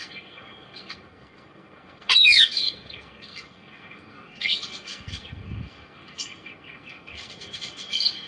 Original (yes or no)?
no